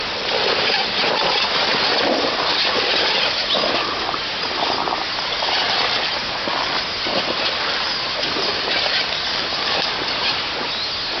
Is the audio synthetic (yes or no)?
no